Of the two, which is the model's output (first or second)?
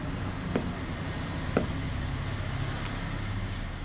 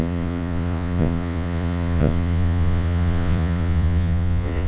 second